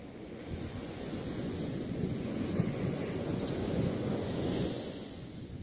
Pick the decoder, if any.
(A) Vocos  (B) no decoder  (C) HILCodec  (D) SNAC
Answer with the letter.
A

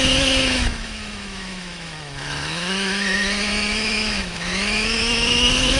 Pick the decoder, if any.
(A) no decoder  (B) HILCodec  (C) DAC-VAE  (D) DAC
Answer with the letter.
C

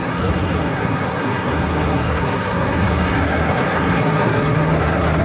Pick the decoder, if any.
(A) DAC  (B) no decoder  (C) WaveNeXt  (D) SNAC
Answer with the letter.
D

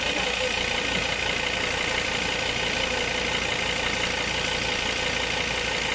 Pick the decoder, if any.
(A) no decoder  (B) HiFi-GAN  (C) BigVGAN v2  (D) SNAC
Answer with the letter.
A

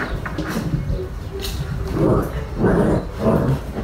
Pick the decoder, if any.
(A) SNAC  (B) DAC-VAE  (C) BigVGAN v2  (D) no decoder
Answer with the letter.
D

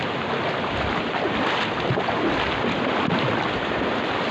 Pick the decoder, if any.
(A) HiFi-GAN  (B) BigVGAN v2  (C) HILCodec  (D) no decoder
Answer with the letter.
D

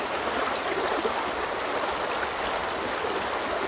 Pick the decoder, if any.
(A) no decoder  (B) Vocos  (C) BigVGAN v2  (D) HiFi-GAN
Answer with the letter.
A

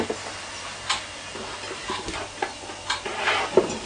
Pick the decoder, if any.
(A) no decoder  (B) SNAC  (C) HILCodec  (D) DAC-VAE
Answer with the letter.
A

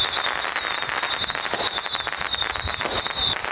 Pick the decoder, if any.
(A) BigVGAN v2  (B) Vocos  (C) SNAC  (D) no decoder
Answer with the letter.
D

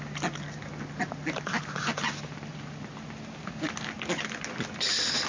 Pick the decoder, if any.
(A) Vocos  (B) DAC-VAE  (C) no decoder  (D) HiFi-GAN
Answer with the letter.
C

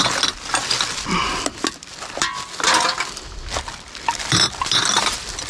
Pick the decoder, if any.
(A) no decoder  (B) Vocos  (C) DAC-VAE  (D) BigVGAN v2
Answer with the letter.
A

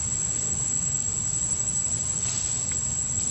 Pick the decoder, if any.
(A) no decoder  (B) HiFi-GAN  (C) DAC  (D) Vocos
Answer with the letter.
A